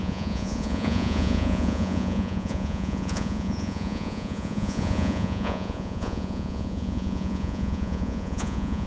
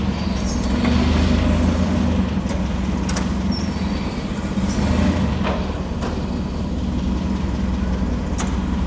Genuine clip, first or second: second